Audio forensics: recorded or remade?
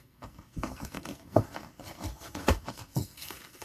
remade